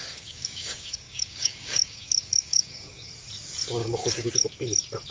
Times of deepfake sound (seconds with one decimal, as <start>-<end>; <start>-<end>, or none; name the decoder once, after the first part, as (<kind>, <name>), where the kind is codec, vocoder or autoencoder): 0.0-3.1 (codec, DAC); 3.8-4.3

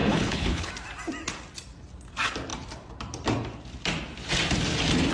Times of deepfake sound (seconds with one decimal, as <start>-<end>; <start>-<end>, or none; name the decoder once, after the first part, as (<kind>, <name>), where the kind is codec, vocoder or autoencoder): 0.0-0.7 (codec, HILCodec)

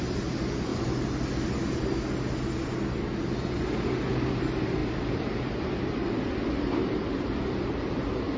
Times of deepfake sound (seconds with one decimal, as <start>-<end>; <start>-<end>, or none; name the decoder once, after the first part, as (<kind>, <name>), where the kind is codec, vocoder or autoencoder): none

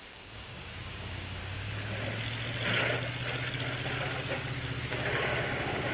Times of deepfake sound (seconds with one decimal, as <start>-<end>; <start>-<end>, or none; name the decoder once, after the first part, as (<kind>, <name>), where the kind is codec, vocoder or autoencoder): 0.0-1.4 (codec, DAC); 4.9-5.9

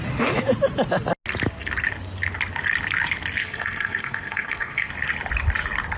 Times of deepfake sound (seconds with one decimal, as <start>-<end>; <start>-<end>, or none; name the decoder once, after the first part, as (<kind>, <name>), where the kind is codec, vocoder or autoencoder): 3.4-4.9 (codec, SNAC)

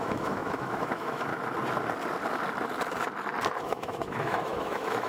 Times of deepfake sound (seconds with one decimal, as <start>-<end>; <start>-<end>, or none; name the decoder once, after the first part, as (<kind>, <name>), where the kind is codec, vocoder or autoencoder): 0.0-1.3 (autoencoder, DAC-VAE); 3.6-5.1

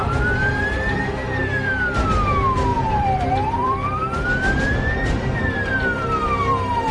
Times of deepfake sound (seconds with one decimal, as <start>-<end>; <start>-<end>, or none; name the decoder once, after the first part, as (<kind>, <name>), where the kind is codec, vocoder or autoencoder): 0.0-1.0 (vocoder, BigVGAN v2); 2.7-6.9

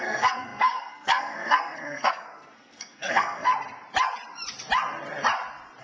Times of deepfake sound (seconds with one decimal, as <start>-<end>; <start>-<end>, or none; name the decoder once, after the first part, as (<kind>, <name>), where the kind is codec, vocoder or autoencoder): 0.0-3.5 (codec, SNAC)